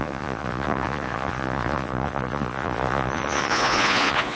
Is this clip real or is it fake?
fake